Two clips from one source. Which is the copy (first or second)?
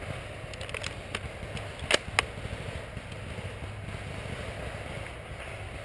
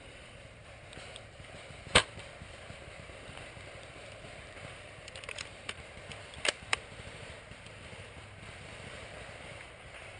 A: second